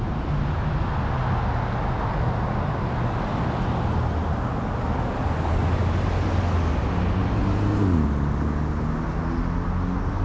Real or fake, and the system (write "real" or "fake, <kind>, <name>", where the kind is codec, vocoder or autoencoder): real